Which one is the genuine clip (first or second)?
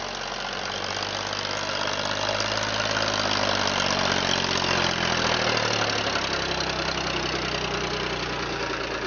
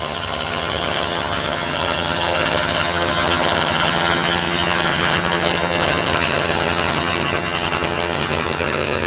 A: first